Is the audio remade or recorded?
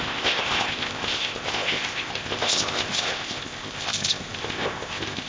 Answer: remade